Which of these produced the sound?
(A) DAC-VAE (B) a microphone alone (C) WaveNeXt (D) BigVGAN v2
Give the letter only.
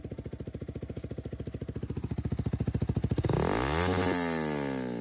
B